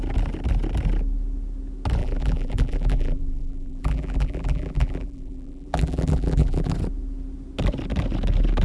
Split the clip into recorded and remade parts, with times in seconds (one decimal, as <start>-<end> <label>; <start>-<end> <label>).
0.0-2.0 recorded; 2.0-6.7 remade; 6.7-8.6 recorded